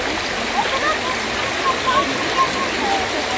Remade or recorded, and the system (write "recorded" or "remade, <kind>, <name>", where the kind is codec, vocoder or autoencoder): recorded